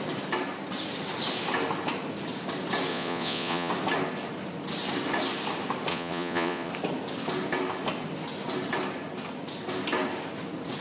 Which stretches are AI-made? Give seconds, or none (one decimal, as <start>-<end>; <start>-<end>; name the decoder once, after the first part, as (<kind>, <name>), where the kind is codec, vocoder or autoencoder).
2.9-3.7 (vocoder, Vocos); 5.9-6.7